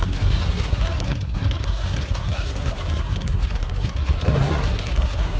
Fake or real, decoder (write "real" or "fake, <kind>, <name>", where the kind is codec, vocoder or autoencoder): fake, codec, SNAC